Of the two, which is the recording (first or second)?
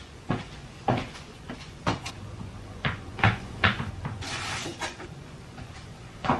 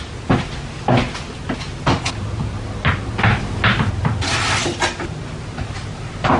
second